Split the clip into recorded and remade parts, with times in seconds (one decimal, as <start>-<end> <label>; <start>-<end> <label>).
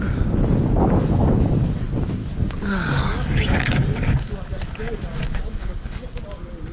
0.0-1.0 recorded; 1.0-1.8 remade; 1.8-2.2 recorded; 2.2-6.2 remade; 6.2-6.7 recorded